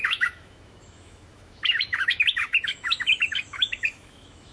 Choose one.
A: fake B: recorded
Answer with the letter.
A